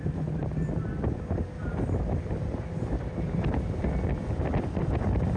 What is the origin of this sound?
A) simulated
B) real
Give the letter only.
B